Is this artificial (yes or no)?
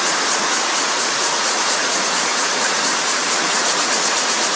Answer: yes